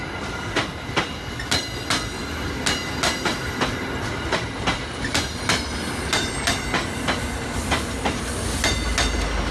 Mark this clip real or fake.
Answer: real